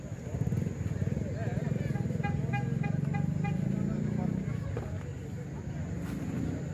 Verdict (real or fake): real